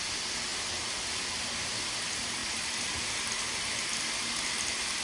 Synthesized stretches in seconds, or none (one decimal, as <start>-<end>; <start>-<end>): 2.4-3.0